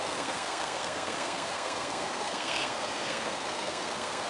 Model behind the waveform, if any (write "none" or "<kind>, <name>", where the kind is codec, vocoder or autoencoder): codec, SNAC